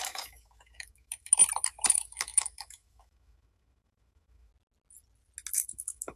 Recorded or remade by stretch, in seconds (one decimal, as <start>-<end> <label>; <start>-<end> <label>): 0.0-1.4 remade; 1.4-1.9 recorded; 1.9-4.5 remade; 4.5-5.5 recorded; 5.5-6.2 remade